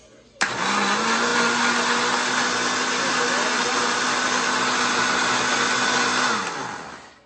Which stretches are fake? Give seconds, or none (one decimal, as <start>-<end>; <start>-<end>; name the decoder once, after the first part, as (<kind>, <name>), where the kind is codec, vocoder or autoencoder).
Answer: none